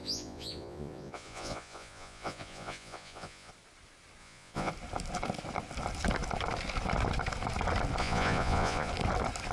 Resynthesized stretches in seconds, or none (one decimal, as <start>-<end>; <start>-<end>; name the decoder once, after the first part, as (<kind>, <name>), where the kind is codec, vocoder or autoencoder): 0.0-3.5 (vocoder, Vocos); 4.2-4.7; 8.0-8.9